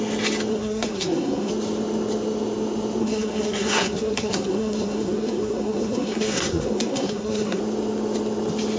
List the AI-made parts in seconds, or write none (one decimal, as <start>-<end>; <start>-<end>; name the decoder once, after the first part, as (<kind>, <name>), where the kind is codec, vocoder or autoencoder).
0.5-1.5 (codec, SNAC); 3.0-7.6